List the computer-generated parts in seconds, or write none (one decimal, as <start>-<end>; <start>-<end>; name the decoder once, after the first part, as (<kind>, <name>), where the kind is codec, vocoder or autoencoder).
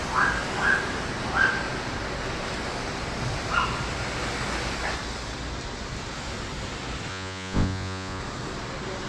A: 7.1-8.2 (vocoder, Vocos)